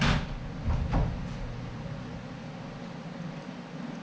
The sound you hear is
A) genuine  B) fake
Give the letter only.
A